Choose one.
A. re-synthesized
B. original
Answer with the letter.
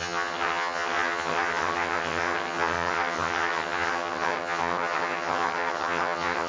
A